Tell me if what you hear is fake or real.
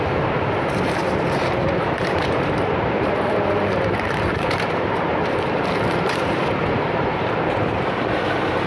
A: fake